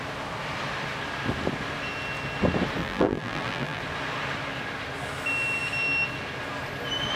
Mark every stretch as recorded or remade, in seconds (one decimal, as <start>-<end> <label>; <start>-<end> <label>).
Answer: 0.0-2.8 recorded; 2.8-3.8 remade; 3.8-7.2 recorded